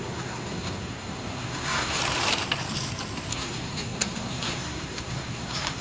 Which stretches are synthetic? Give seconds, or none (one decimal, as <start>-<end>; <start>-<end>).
0.0-2.0; 3.3-5.8